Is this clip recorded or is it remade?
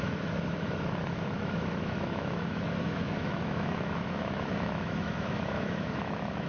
remade